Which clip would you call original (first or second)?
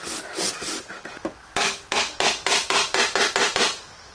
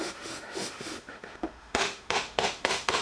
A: first